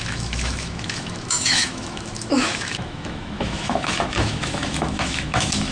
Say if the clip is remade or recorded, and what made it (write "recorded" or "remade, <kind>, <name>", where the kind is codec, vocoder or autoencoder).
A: remade, autoencoder, DAC-VAE